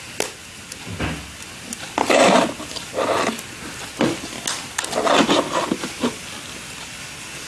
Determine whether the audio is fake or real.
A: real